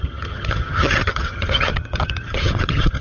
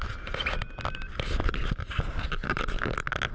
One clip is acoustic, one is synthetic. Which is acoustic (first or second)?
second